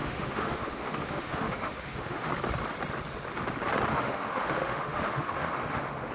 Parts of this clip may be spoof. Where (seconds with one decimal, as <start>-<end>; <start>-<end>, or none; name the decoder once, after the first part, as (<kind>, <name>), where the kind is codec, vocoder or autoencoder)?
0.0-2.3 (autoencoder, DAC-VAE); 3.9-6.1